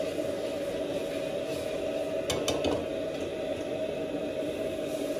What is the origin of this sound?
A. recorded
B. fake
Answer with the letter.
A